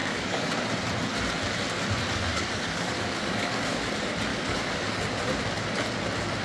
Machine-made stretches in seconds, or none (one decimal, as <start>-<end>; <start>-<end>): 0.0-0.5; 2.3-3.8; 4.3-5.0